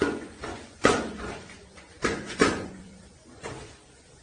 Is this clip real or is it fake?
fake